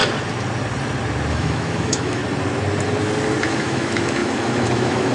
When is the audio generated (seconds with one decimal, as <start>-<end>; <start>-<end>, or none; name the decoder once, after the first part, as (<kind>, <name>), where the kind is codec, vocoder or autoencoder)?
1.3-2.2 (autoencoder, DAC-VAE); 3.4-5.1